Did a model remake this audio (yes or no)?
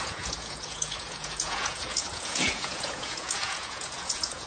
yes